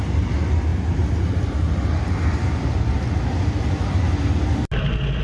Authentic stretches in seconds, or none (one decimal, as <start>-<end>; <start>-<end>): 0.0-5.2